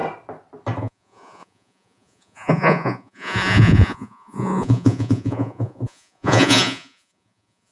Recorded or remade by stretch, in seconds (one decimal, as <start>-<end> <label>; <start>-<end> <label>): 0.0-0.8 recorded; 0.8-7.7 remade